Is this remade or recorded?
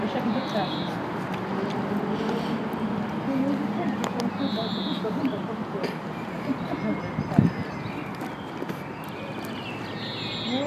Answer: recorded